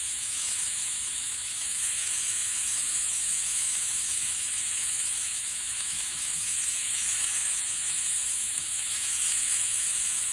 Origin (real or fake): fake